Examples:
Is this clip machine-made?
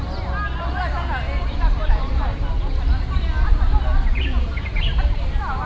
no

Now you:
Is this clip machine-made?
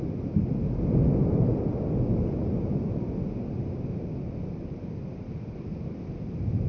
no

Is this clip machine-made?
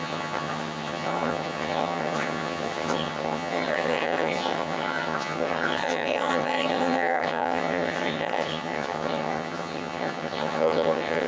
yes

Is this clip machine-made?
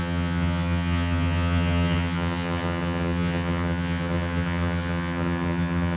yes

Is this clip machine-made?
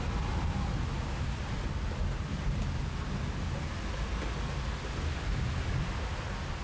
no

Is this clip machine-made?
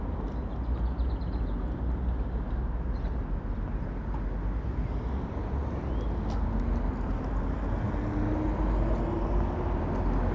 no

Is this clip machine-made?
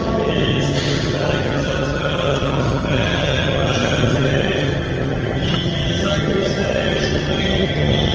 yes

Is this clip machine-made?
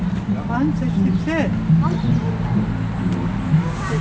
no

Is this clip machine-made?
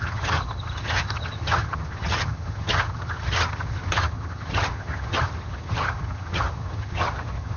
yes